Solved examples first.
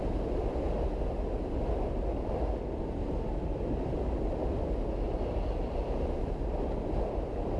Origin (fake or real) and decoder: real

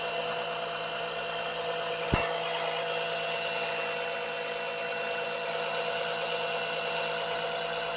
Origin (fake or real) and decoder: real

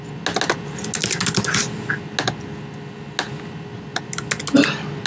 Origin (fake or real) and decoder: real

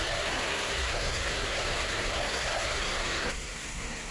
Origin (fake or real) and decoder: fake, codec, SNAC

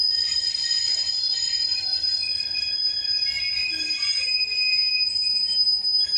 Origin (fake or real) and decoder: real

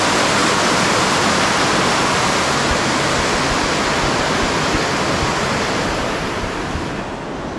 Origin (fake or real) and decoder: real